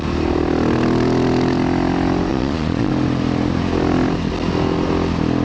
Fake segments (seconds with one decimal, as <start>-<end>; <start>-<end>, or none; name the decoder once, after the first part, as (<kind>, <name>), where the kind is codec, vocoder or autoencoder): 2.3-2.9 (vocoder, Vocos)